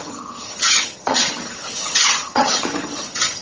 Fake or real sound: fake